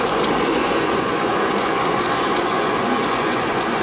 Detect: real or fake fake